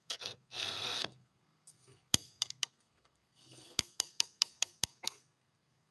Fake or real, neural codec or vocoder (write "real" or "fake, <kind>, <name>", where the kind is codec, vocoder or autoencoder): fake, codec, SNAC